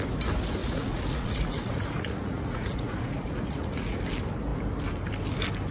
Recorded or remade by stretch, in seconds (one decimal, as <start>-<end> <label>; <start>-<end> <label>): 0.0-0.6 recorded; 0.6-4.0 remade; 4.0-5.7 recorded